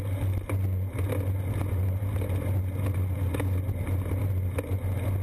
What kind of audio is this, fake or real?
real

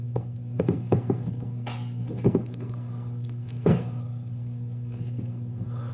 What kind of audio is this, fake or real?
fake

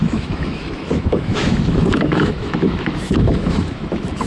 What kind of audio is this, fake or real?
fake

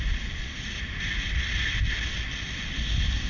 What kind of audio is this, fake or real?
real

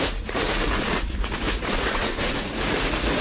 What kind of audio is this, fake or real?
fake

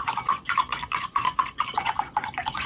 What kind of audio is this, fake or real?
fake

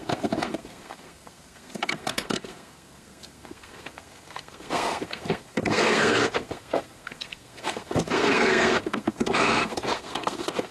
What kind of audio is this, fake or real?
fake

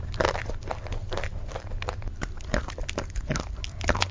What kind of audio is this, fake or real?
real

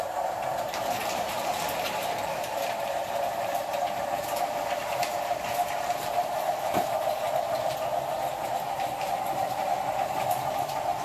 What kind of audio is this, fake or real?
fake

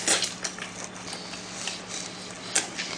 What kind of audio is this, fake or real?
real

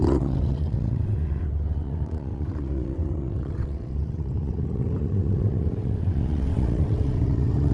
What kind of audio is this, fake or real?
fake